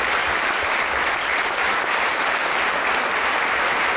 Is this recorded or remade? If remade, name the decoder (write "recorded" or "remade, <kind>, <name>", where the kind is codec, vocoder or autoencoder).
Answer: recorded